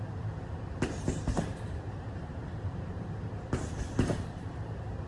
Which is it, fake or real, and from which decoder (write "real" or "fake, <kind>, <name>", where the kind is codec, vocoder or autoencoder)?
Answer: fake, vocoder, BigVGAN v2